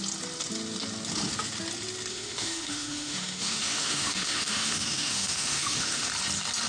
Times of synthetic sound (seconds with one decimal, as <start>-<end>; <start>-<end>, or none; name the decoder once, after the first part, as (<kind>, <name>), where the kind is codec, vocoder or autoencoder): 2.1-6.1 (autoencoder, DAC-VAE)